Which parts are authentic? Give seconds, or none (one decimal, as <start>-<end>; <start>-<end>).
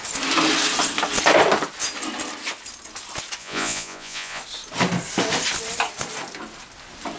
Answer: 0.0-3.4; 4.4-7.2